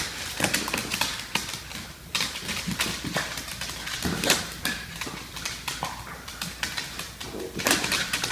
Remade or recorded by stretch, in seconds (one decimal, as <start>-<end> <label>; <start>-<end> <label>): 0.0-8.3 recorded